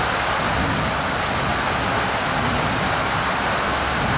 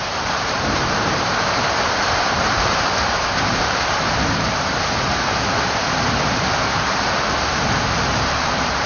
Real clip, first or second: first